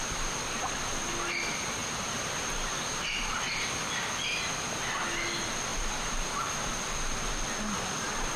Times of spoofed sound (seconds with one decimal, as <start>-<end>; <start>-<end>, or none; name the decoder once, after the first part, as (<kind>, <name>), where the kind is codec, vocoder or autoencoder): 0.0-0.6 (vocoder, BigVGAN v2); 1.8-4.4; 5.7-6.7